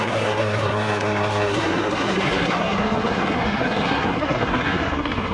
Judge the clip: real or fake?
fake